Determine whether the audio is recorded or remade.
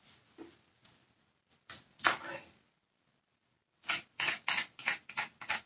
recorded